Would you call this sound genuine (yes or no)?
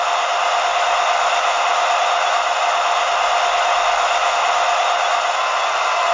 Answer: yes